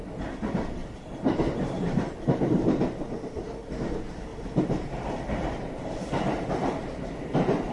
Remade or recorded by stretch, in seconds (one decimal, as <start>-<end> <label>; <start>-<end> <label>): 0.0-0.8 recorded; 0.8-3.0 remade; 3.0-4.3 recorded; 4.3-7.7 remade